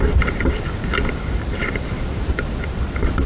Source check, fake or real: real